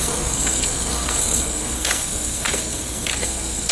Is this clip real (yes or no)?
no